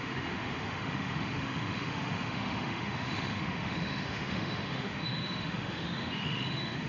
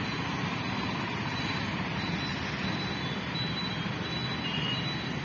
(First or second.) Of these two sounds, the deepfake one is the first